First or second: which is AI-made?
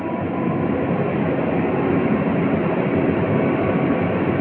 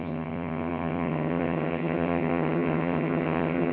second